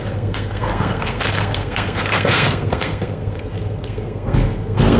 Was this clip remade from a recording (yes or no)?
yes